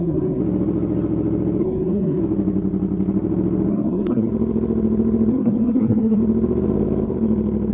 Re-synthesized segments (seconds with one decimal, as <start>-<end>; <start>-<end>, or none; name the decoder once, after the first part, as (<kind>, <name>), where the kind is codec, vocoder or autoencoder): 0.0-0.4 (codec, SNAC); 1.6-2.2; 3.7-4.3; 5.3-6.2